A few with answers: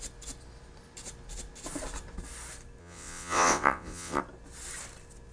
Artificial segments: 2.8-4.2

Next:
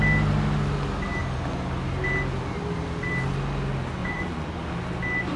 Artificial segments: 4.0-4.5

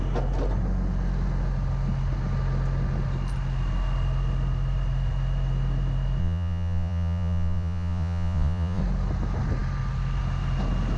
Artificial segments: 6.2-8.8

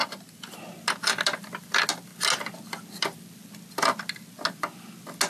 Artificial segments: 0.0-0.6